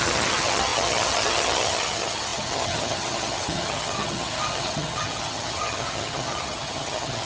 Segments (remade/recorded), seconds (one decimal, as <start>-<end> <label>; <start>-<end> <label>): 0.0-7.3 remade